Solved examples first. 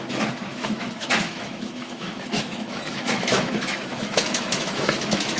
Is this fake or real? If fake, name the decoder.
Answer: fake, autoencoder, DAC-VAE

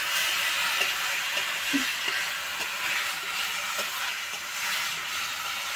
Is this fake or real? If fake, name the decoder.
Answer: real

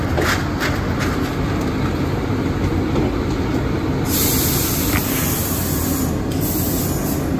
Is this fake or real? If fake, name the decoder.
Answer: real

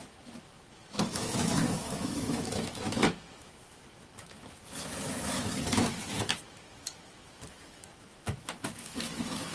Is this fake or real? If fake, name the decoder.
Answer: fake, autoencoder, DAC-VAE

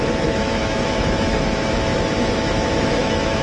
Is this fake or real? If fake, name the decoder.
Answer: fake, autoencoder, DAC-VAE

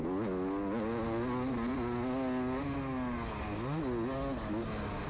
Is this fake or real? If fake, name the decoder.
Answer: real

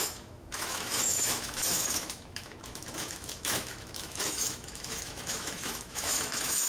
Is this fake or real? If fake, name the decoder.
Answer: fake, autoencoder, DAC-VAE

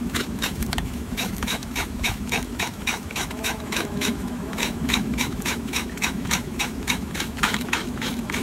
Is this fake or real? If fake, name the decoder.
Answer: fake, autoencoder, DAC-VAE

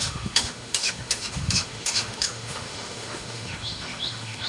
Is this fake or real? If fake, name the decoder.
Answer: fake, autoencoder, DAC-VAE